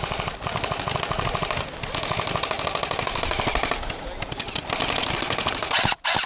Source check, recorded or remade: recorded